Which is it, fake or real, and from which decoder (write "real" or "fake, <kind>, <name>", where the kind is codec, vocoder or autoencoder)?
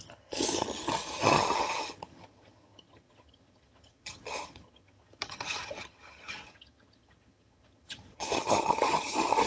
fake, vocoder, HiFi-GAN